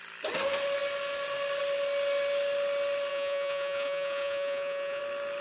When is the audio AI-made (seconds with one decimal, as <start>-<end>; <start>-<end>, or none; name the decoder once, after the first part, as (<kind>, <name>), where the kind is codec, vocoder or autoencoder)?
3.1-5.0 (vocoder, Vocos)